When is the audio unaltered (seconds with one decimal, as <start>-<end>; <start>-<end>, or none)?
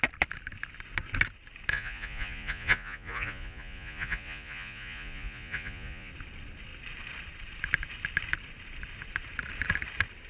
0.0-1.7; 6.1-10.3